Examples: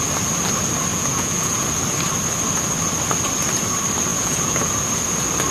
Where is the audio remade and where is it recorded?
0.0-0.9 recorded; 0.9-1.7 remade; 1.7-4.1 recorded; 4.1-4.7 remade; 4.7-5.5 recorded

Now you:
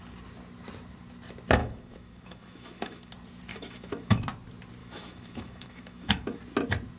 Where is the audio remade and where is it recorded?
0.0-1.6 recorded; 1.6-3.1 remade; 3.1-3.5 recorded; 3.5-4.2 remade; 4.2-4.8 recorded; 4.8-6.4 remade; 6.4-7.0 recorded

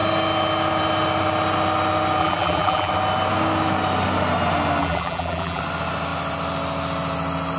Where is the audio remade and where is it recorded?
0.0-2.2 recorded; 2.2-2.9 remade; 2.9-4.8 recorded; 4.8-5.6 remade; 5.6-7.6 recorded

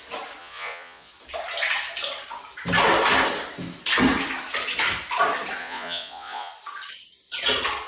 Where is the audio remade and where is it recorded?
0.0-0.4 recorded; 0.4-1.1 remade; 1.1-5.6 recorded; 5.6-6.5 remade; 6.5-7.9 recorded

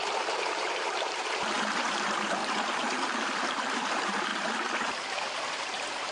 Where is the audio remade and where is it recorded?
0.0-2.4 remade; 2.4-3.4 recorded; 3.4-4.3 remade; 4.3-5.2 recorded; 5.2-6.1 remade

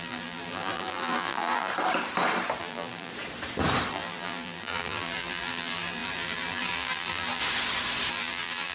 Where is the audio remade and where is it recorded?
0.0-1.7 remade; 1.7-2.6 recorded; 2.6-3.1 remade; 3.1-3.9 recorded; 3.9-7.4 remade; 7.4-8.1 recorded; 8.1-8.7 remade

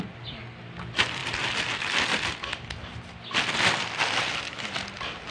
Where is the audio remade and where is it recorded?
0.0-5.3 recorded

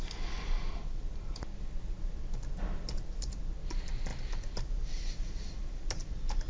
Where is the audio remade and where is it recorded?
0.0-6.5 recorded